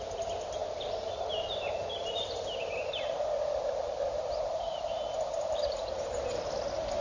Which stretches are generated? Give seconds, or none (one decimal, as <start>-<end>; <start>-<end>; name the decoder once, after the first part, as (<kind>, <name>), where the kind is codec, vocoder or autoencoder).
0.6-1.2 (vocoder, BigVGAN v2); 2.0-6.2

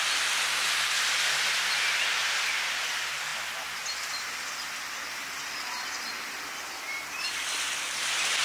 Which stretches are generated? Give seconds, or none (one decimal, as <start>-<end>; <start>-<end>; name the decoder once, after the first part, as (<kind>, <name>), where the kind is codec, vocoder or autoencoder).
none

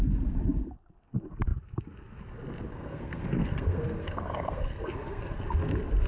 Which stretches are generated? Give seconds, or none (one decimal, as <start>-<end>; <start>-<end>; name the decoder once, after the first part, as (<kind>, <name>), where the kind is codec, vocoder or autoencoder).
2.7-5.4 (codec, SNAC)

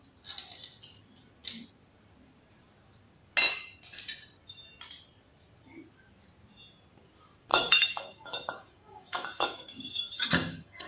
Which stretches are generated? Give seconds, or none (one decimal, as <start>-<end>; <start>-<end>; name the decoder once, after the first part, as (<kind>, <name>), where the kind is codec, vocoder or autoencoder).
7.5-10.9 (codec, DAC)

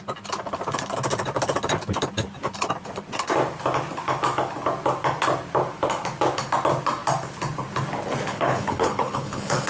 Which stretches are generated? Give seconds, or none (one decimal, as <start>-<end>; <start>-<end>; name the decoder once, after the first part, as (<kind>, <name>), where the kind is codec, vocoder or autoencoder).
8.3-9.7 (codec, HILCodec)

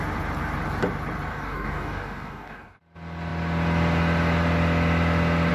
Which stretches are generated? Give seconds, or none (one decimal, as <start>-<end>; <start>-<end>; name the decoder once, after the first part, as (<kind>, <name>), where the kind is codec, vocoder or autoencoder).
1.3-2.8 (codec, DAC)

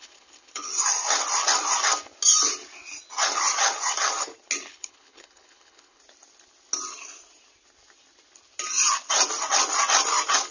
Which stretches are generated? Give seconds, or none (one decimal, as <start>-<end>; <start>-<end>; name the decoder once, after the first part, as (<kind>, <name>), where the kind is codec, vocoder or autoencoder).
0.0-0.7 (codec, HILCodec); 4.7-6.0